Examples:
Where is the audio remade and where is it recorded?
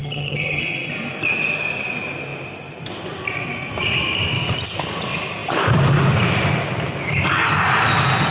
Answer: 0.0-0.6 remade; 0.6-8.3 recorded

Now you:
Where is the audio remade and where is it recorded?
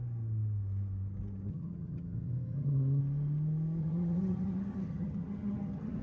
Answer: 0.0-1.5 recorded; 1.5-3.0 remade; 3.0-3.8 recorded; 3.8-6.0 remade